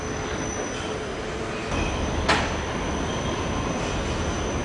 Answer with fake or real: real